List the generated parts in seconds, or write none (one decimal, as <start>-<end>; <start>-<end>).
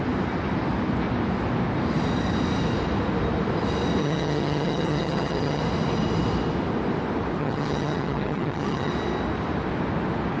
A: 4.0-5.6; 7.4-8.9